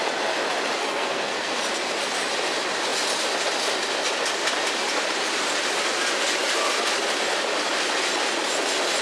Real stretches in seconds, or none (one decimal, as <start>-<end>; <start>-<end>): 0.0-0.8; 1.6-9.0